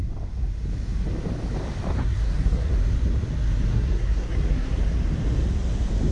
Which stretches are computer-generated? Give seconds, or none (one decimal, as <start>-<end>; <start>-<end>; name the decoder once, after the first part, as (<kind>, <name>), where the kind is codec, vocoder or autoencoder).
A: 2.0-2.7 (codec, SNAC); 3.7-4.8